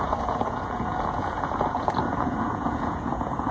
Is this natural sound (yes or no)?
no